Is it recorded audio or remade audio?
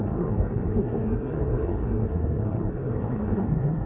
remade